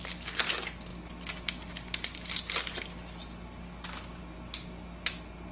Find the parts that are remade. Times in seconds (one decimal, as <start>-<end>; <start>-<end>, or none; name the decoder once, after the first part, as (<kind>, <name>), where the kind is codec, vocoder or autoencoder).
none